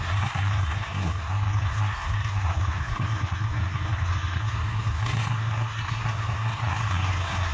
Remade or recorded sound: remade